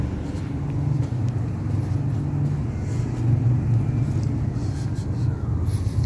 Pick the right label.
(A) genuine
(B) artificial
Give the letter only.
A